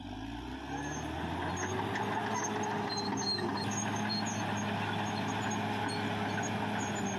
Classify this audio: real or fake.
real